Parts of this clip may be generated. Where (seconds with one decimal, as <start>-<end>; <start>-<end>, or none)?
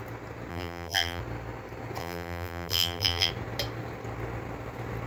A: 0.5-1.2; 2.0-3.3